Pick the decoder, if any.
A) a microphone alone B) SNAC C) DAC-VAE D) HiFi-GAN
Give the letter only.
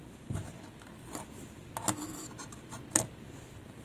A